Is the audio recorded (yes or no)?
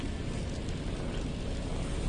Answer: yes